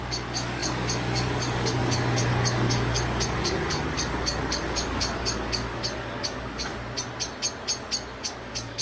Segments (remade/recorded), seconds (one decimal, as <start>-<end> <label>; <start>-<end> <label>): 0.0-6.7 remade; 6.7-8.2 recorded; 8.2-8.8 remade